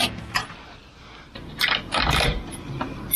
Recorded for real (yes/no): yes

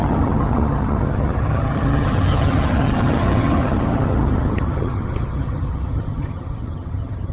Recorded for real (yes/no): no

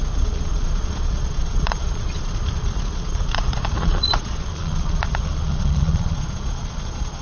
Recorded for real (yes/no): no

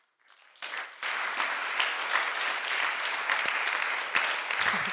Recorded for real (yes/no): yes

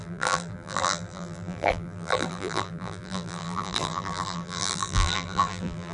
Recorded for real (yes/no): no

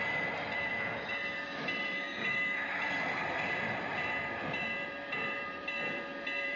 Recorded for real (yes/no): no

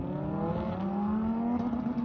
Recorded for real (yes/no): yes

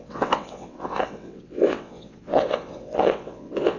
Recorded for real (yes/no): no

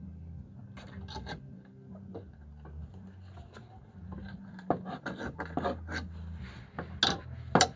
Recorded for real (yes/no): yes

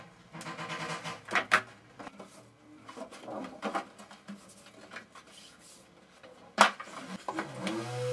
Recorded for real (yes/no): yes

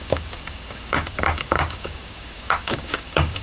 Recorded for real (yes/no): no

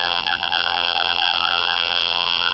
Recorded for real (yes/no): no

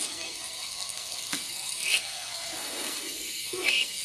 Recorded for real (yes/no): no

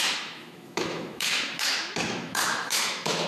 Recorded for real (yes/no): no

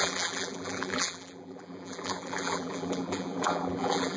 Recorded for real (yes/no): no